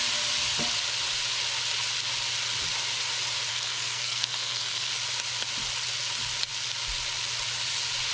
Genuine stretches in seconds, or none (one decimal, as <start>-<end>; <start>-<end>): 0.0-3.5; 4.9-8.1